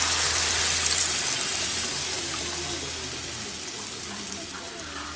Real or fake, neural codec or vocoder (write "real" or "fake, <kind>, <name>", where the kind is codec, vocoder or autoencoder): real